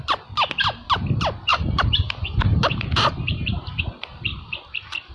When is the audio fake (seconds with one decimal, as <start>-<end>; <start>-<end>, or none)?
1.5-3.8